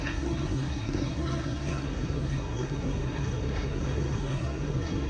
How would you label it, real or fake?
fake